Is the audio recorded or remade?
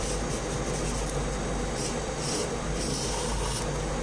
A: recorded